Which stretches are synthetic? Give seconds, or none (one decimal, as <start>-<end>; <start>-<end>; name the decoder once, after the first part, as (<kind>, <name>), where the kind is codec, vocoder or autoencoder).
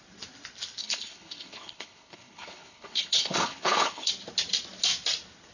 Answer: 0.8-4.1 (codec, HILCodec)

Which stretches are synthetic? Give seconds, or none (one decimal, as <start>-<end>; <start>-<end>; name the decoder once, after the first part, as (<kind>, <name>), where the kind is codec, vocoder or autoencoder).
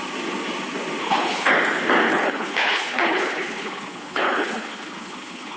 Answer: 1.0-1.5 (codec, HILCodec); 2.1-5.6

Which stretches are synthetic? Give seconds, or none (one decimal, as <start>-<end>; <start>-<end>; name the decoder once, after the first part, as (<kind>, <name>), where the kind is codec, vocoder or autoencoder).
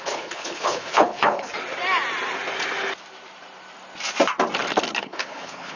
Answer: 0.0-1.5 (codec, HILCodec); 5.0-5.8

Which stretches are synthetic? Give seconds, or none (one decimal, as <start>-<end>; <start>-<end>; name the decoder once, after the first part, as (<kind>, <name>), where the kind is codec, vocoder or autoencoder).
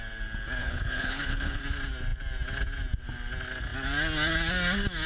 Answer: 0.6-1.6 (codec, HILCodec)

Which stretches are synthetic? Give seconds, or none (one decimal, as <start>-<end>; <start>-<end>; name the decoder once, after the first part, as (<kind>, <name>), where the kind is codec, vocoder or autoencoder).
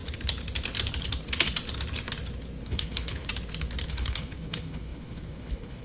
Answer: 2.6-3.3 (codec, HILCodec); 3.9-5.8